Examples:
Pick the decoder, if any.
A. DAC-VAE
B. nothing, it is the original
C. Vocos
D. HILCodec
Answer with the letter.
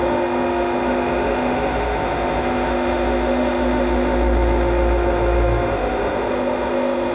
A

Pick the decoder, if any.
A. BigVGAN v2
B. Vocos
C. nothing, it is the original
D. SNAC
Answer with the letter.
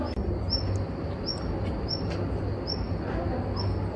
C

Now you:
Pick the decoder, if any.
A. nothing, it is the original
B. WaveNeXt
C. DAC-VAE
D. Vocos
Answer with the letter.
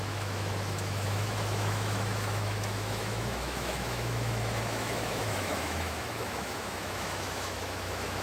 C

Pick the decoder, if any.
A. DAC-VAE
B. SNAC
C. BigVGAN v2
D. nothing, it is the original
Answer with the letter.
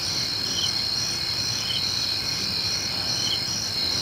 D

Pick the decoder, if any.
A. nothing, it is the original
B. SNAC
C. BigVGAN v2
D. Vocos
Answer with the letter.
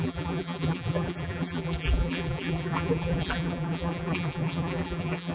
C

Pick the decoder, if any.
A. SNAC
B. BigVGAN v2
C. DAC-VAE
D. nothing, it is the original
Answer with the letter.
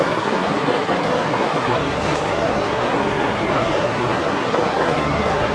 A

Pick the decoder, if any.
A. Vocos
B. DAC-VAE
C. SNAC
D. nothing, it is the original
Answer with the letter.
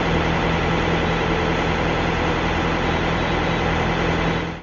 D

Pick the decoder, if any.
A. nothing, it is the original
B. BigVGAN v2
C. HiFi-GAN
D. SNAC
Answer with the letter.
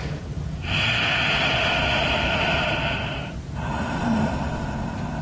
B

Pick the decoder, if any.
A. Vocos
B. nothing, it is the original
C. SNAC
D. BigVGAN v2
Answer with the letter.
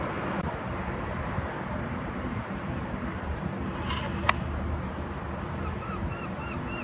D